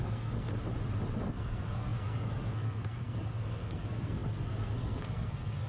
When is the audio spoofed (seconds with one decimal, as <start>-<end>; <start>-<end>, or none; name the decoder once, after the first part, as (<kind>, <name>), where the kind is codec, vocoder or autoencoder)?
0.0-0.5 (codec, SNAC); 1.3-5.7